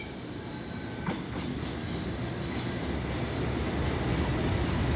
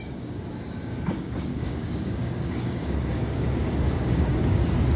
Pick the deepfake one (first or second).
second